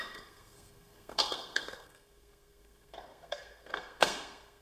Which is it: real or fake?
fake